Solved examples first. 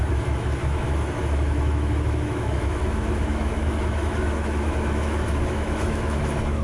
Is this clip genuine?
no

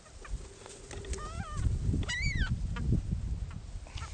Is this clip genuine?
yes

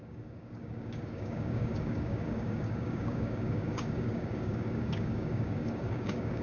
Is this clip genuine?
no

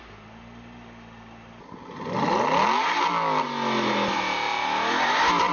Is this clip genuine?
yes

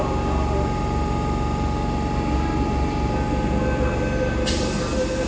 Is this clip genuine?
yes